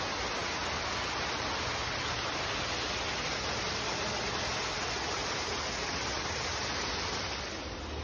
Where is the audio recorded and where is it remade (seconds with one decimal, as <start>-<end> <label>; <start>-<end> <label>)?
0.0-8.0 recorded